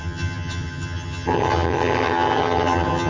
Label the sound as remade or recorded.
remade